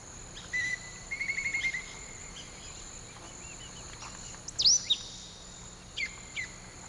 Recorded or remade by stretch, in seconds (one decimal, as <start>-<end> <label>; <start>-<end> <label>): 0.0-0.6 recorded; 0.6-1.4 remade; 1.4-6.9 recorded